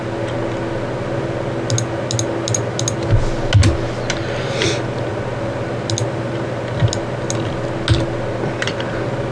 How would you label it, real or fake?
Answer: real